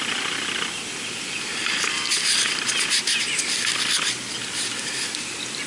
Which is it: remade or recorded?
recorded